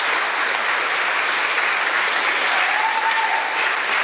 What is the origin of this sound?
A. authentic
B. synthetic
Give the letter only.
A